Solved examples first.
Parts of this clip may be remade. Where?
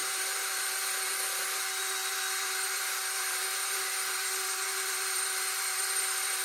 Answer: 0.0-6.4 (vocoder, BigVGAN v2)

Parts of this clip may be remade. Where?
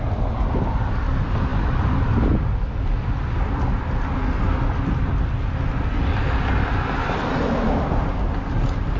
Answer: none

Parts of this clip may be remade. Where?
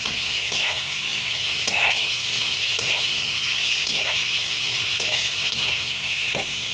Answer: 0.0-6.7 (codec, SNAC)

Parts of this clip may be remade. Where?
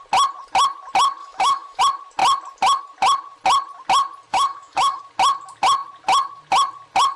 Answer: 1.2-1.8 (autoencoder, DAC-VAE); 4.3-5.0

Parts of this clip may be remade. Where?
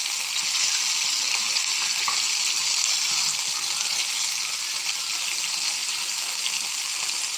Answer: none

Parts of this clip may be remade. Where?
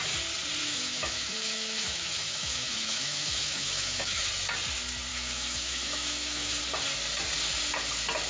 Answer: 0.6-4.3 (autoencoder, DAC-VAE); 5.1-6.6